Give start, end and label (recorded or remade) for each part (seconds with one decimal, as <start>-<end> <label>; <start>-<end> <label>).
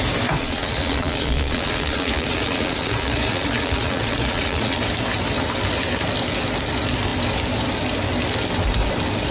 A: 0.0-0.4 recorded; 0.4-4.8 remade; 4.8-9.3 recorded